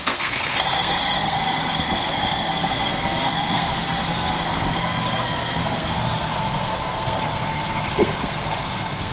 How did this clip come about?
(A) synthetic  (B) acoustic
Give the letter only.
A